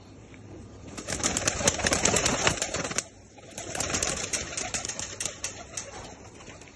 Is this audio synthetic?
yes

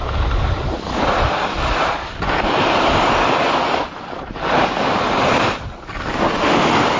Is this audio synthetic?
no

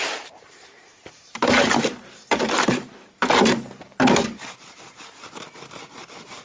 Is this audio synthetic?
yes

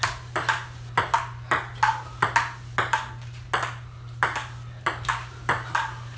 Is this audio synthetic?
no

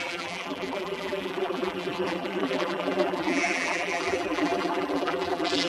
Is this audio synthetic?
yes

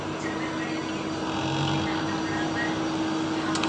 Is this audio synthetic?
no